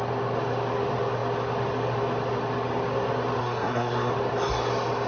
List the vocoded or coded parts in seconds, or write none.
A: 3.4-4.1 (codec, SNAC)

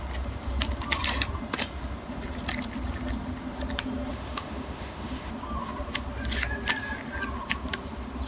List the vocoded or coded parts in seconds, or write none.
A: 4.1-5.3 (autoencoder, DAC-VAE)

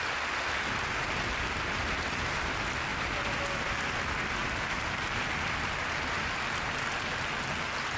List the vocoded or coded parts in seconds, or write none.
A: 2.9-3.4 (vocoder, BigVGAN v2)

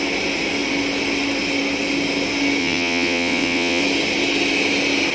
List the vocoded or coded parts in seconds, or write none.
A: 2.6-3.8 (vocoder, WaveNeXt)

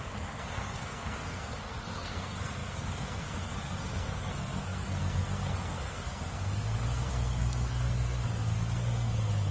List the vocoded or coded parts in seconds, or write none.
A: 0.0-9.5 (codec, SNAC)

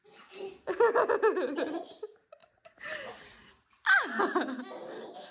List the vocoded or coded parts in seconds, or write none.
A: none

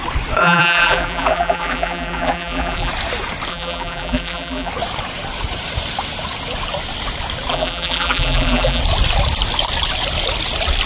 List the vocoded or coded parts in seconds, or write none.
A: 0.4-2.9 (vocoder, BigVGAN v2); 3.5-4.7; 7.5-8.8